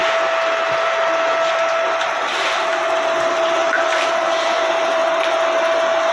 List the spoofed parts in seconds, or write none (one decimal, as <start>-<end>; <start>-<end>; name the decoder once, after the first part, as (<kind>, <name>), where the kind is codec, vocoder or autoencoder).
3.3-5.0 (vocoder, BigVGAN v2)